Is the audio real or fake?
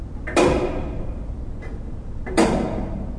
real